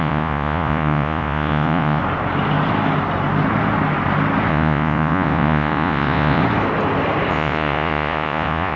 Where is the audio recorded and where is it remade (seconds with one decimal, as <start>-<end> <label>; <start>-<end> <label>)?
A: 0.0-2.0 remade; 2.0-4.5 recorded; 4.5-6.4 remade; 6.4-7.3 recorded; 7.3-8.8 remade